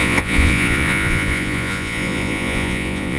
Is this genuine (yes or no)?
no